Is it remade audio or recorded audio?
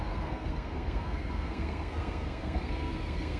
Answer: remade